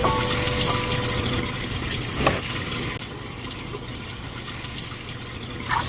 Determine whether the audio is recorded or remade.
recorded